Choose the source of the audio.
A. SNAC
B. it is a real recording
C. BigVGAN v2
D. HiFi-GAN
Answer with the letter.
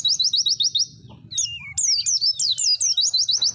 B